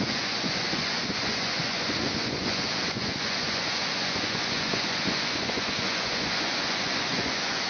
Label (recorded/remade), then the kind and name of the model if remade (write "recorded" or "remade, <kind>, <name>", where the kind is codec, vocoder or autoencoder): remade, vocoder, Vocos